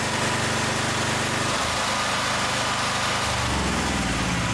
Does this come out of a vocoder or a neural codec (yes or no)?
no